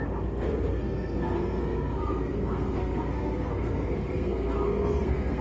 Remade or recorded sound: remade